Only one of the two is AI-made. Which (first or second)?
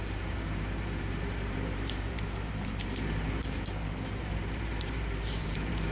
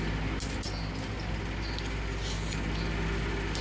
first